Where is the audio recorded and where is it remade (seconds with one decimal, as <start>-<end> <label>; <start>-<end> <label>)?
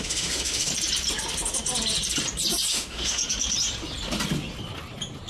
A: 0.0-0.7 remade; 0.7-2.7 recorded; 2.7-3.2 remade; 3.2-5.3 recorded